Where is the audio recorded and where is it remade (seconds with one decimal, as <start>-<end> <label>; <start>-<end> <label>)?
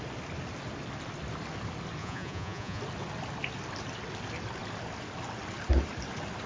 0.0-2.0 recorded; 2.0-2.8 remade; 2.8-6.5 recorded